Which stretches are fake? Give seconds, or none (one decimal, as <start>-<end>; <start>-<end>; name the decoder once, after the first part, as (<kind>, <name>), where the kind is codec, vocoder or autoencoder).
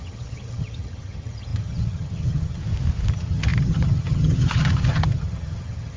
0.0-2.6 (vocoder, HiFi-GAN); 3.1-6.0